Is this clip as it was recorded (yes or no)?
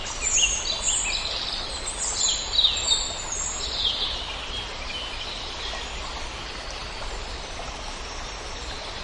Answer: yes